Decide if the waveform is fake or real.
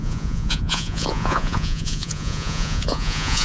fake